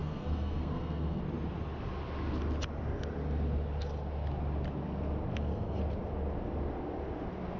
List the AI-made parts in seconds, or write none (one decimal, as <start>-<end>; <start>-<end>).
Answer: 0.0-1.2; 5.3-5.8